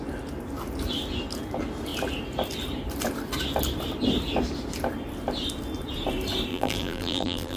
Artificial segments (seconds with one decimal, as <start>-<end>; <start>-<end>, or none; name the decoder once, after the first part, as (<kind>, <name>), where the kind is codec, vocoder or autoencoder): 6.5-7.6 (vocoder, BigVGAN v2)